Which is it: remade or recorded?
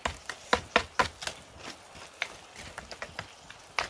recorded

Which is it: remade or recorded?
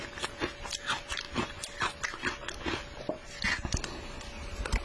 recorded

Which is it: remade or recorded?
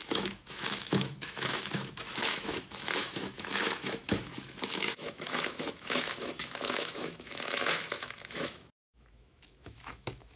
remade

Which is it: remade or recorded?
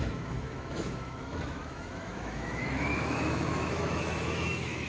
remade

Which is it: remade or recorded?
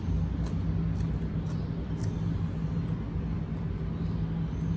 recorded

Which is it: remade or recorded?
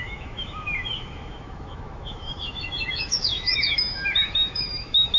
remade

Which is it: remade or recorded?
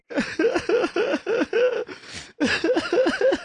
recorded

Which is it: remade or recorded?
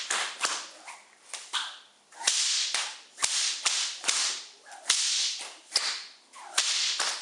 recorded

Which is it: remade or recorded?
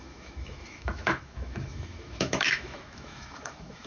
remade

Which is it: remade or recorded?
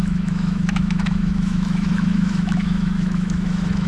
remade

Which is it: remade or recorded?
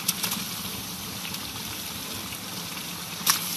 recorded